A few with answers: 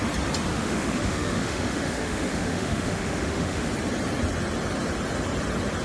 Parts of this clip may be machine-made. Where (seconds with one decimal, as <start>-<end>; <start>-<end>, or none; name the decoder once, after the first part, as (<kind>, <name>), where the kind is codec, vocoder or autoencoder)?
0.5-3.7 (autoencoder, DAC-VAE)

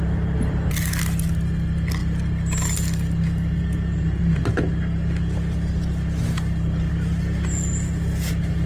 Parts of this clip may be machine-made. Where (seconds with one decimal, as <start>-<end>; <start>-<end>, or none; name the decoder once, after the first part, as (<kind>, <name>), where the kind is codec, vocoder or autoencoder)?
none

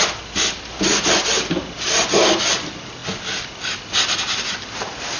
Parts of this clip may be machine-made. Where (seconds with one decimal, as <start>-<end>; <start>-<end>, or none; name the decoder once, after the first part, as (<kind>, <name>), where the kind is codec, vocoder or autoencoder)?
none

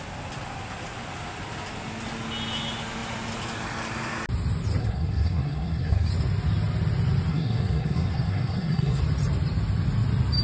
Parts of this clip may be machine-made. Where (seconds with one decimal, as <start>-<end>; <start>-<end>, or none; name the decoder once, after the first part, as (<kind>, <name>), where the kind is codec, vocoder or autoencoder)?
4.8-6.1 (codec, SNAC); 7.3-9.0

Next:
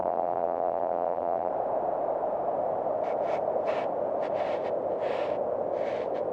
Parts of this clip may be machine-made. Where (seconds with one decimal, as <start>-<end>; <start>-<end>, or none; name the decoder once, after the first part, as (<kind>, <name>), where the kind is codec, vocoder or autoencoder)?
0.0-1.5 (vocoder, BigVGAN v2)

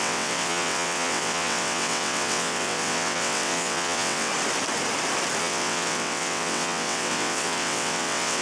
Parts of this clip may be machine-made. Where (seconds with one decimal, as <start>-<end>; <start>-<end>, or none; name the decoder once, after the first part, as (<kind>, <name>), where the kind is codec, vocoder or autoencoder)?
0.0-4.3 (vocoder, WaveNeXt); 5.4-8.4